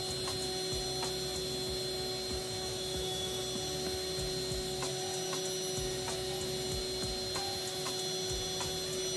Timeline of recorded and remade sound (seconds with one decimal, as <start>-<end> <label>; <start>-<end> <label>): 0.0-2.4 recorded; 2.4-3.4 remade; 3.4-9.2 recorded